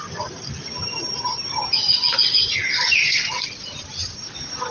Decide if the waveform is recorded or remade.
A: recorded